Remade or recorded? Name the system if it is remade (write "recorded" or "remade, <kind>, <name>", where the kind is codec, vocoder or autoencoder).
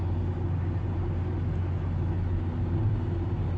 recorded